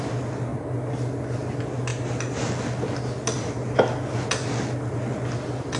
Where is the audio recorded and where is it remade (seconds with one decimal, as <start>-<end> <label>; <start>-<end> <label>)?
0.0-5.8 recorded